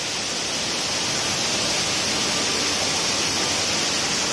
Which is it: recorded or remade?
recorded